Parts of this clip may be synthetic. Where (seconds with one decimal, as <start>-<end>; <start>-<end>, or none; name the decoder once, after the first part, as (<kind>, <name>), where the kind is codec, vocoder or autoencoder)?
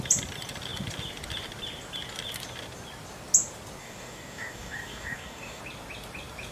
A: 3.8-5.6 (codec, DAC)